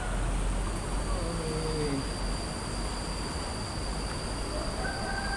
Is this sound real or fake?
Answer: real